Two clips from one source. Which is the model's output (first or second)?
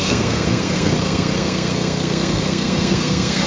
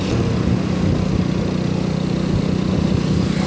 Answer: first